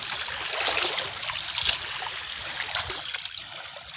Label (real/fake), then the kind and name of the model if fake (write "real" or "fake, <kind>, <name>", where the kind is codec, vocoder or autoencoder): real